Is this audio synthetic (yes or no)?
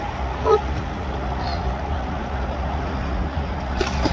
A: yes